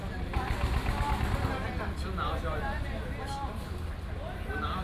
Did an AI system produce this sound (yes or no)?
no